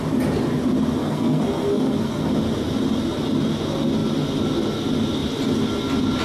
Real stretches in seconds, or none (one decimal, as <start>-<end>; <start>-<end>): 0.0-1.0; 2.3-6.2